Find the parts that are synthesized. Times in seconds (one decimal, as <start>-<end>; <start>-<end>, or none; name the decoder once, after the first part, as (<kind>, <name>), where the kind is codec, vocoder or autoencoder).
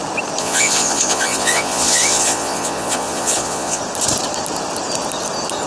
0.4-3.8 (vocoder, Vocos)